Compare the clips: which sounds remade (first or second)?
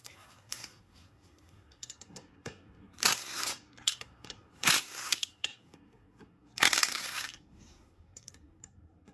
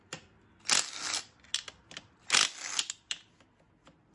first